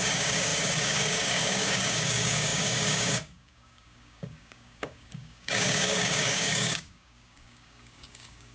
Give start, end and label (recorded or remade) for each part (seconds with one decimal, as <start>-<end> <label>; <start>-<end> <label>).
0.0-8.5 remade